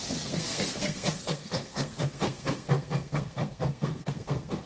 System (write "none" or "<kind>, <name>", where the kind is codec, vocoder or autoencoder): codec, SNAC